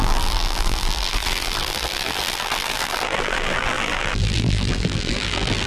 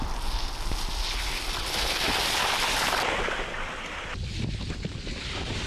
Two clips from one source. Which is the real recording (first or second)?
second